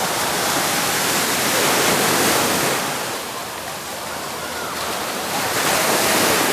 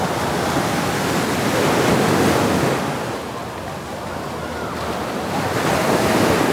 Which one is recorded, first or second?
second